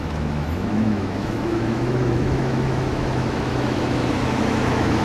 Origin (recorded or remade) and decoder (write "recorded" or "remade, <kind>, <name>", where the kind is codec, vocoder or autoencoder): remade, autoencoder, DAC-VAE